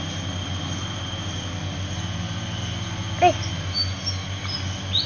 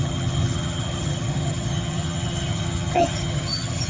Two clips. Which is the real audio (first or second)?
first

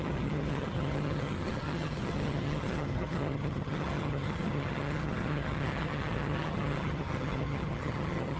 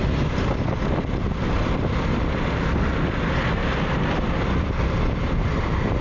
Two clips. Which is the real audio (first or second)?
second